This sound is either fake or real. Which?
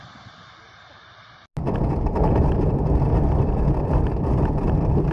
real